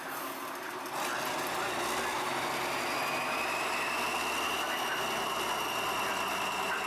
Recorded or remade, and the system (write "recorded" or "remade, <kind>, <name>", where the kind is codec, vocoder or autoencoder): recorded